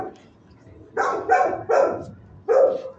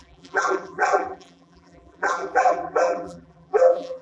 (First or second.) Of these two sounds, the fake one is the second